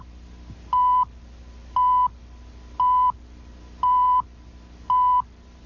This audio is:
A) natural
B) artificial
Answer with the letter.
A